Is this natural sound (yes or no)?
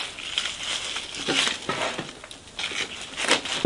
yes